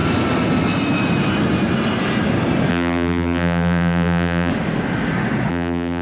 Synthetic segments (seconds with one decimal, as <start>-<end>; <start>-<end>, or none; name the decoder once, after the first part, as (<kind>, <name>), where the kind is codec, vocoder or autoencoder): 2.7-4.5 (vocoder, BigVGAN v2); 5.5-6.0